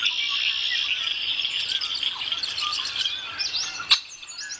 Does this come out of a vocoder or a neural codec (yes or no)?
no